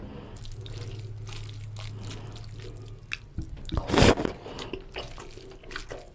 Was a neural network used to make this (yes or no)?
no